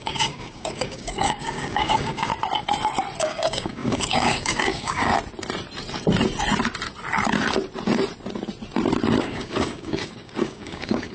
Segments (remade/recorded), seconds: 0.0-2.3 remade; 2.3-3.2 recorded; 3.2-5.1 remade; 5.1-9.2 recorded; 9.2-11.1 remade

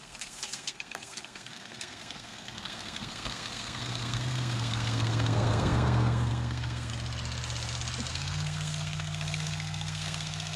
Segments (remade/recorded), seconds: 0.0-6.9 remade; 6.9-8.1 recorded; 8.1-10.6 remade